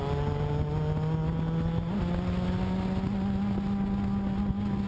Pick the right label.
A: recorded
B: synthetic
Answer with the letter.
A